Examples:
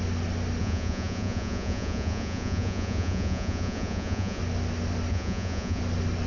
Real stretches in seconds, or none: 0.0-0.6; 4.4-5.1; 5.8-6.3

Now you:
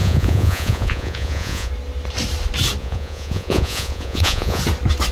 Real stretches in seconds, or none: 1.7-2.8; 4.6-5.1

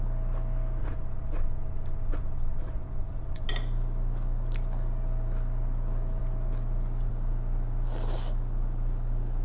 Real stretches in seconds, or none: 0.0-0.8; 3.5-9.4

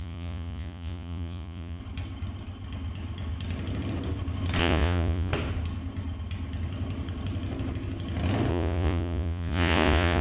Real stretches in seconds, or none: 1.8-4.6; 5.3-8.5

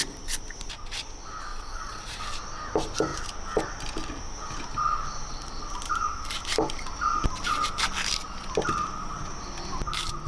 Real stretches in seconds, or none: 0.0-1.5; 2.2-10.3

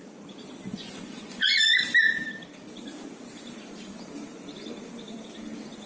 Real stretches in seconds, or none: 0.0-0.7; 1.8-5.9

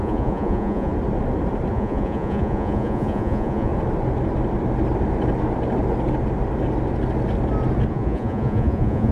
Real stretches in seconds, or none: 0.9-1.7; 3.7-7.9

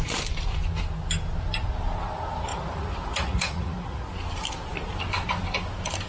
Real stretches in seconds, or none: 0.0-2.5; 4.1-6.1